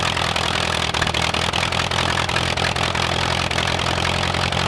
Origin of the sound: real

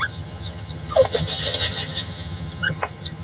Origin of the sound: fake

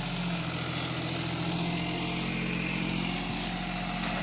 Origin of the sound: real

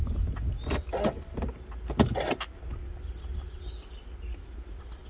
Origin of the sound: real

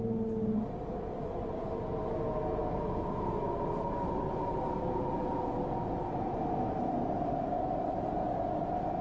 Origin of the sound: real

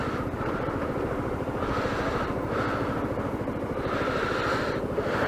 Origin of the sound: real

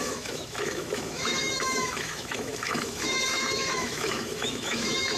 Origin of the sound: fake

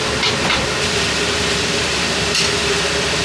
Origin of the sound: fake